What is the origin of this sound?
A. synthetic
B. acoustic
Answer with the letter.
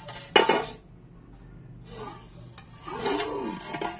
B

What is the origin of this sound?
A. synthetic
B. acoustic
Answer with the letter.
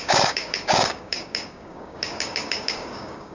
A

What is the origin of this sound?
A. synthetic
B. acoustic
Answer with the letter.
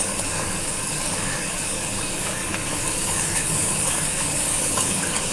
A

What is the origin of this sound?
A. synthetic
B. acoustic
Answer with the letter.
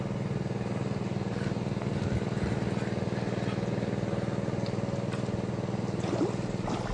B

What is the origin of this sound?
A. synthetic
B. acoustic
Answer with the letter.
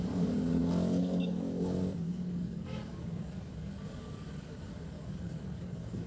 A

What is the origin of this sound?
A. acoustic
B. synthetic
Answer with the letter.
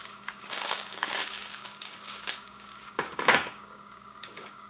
B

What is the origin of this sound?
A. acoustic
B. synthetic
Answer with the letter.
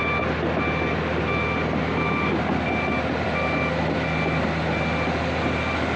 A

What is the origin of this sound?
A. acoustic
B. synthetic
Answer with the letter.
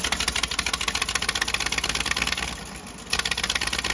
A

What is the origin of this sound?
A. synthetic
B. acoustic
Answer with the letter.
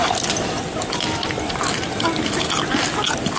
B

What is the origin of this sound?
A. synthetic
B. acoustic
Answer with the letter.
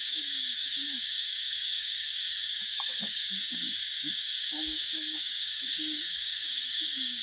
A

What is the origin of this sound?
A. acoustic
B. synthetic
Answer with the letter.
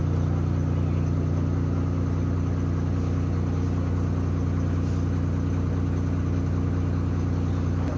A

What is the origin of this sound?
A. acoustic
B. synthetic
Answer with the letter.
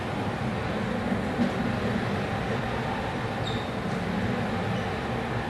A